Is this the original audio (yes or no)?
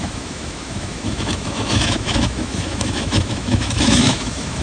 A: no